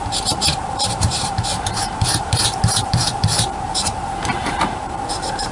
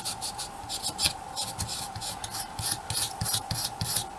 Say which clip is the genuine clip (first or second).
second